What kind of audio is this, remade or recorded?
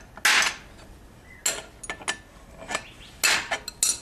recorded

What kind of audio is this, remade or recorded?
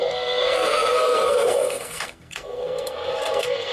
remade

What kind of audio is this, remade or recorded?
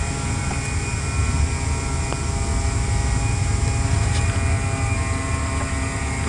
recorded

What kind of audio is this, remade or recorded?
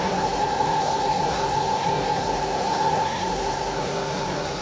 remade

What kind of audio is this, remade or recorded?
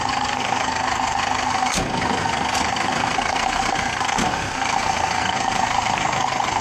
remade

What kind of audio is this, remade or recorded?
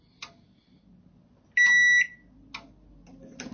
recorded